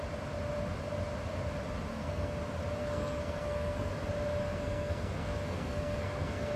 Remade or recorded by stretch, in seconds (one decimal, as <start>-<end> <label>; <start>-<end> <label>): 0.0-1.9 recorded; 1.9-2.4 remade; 2.4-2.8 recorded; 2.8-3.9 remade; 3.9-4.4 recorded; 4.4-6.6 remade